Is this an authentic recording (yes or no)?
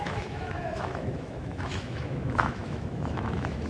no